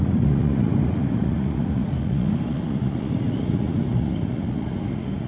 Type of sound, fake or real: fake